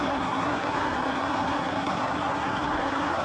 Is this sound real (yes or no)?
no